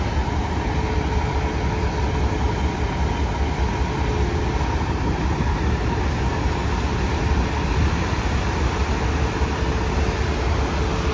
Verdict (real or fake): real